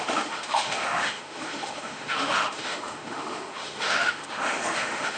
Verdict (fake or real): fake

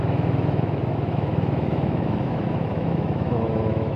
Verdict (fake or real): fake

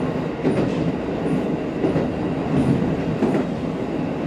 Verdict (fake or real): real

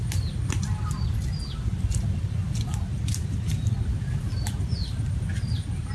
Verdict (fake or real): real